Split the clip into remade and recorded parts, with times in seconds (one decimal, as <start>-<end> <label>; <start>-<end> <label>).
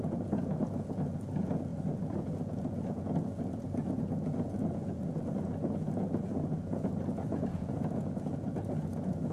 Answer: 0.0-9.3 remade